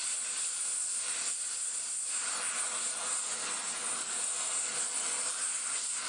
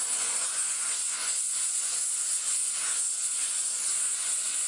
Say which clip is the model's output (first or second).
second